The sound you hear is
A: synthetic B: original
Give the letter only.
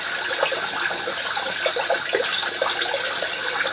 B